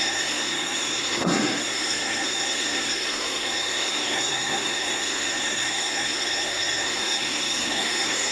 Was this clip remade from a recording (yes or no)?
yes